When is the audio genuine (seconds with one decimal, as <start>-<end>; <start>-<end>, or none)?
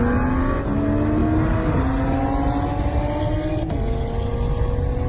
0.0-5.1